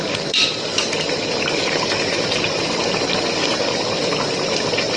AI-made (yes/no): no